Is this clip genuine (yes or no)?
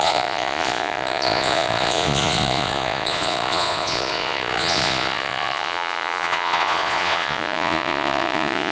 no